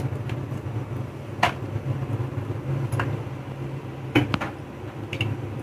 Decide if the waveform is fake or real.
real